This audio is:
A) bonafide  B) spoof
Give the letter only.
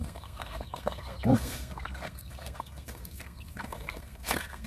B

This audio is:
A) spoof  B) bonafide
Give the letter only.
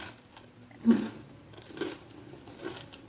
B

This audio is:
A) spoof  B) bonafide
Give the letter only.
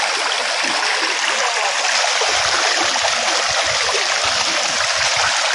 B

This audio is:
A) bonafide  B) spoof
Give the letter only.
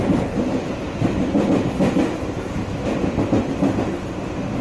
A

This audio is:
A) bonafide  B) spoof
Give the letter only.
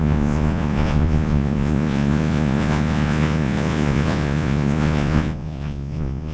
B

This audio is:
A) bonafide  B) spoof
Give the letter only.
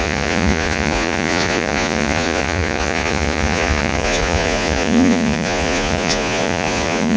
B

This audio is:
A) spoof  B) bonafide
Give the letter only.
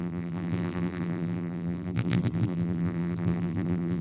A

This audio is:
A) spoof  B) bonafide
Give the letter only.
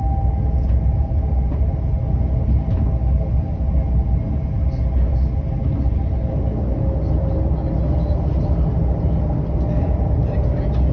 B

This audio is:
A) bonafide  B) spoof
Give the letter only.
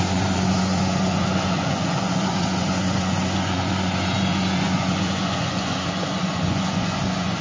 B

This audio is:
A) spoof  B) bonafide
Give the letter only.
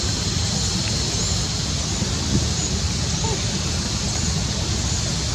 B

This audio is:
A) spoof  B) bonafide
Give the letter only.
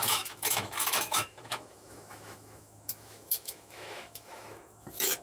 A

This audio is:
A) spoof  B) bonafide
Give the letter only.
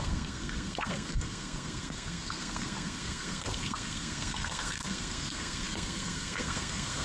A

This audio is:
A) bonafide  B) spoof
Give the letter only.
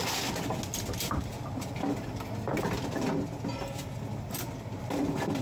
A